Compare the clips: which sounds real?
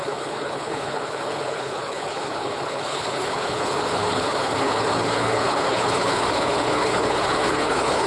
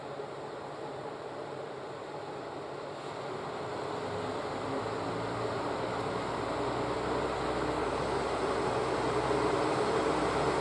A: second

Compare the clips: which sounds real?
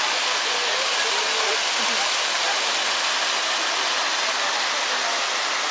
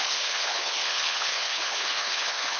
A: first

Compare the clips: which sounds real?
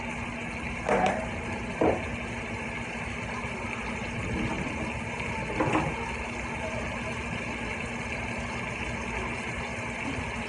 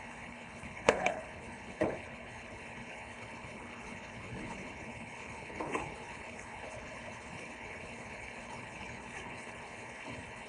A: first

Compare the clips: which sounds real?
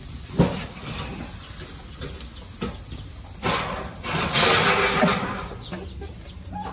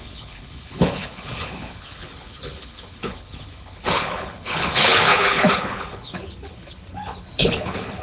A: first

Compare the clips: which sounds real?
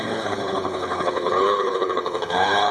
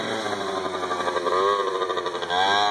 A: second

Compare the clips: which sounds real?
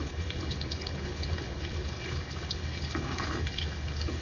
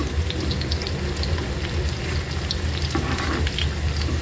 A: second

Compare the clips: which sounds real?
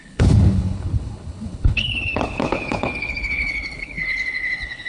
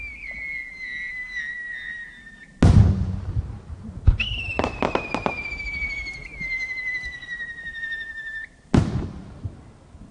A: second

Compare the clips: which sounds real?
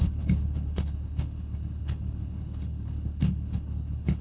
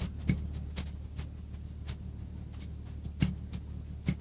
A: second